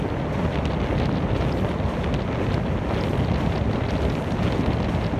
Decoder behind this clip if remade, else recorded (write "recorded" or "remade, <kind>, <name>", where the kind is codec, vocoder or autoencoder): recorded